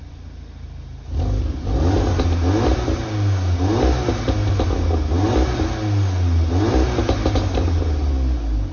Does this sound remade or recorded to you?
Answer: recorded